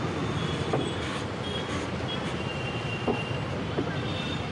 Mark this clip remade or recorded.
recorded